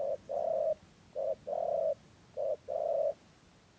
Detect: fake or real real